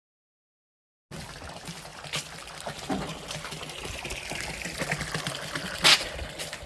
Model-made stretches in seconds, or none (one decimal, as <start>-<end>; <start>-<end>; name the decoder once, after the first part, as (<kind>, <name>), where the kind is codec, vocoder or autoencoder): none